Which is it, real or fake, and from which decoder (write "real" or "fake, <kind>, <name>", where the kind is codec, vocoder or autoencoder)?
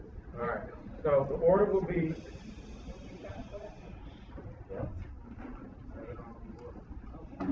real